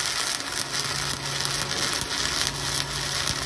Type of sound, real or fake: real